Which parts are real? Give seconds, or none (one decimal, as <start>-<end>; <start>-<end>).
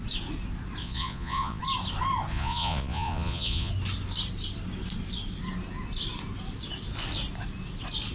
0.0-0.8; 1.6-2.3; 3.7-8.1